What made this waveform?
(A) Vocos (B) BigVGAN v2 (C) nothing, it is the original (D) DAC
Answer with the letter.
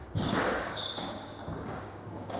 D